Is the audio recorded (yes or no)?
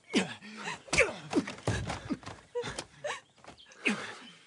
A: no